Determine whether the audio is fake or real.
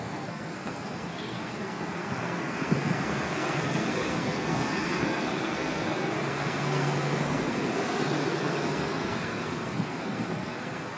fake